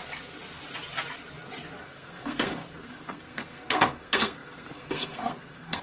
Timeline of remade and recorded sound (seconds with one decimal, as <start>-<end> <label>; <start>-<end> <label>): 0.0-1.8 recorded; 1.8-5.8 remade